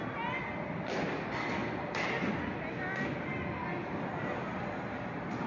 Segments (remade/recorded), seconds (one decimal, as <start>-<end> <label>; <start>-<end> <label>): 0.0-5.5 recorded